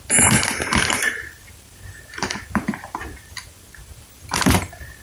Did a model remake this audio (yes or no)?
yes